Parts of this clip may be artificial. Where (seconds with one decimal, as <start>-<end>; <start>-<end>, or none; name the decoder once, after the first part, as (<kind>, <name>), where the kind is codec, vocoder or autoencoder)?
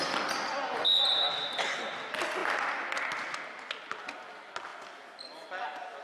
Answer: none